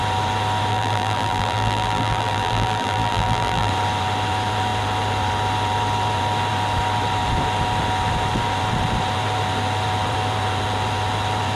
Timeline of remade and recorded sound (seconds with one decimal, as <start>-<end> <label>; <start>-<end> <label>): 0.0-0.7 recorded; 0.7-3.7 remade; 3.7-11.6 recorded